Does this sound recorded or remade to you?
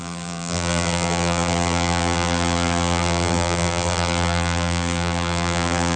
remade